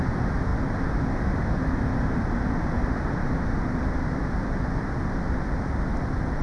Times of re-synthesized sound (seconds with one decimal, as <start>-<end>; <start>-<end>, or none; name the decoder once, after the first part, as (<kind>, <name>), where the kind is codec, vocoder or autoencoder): none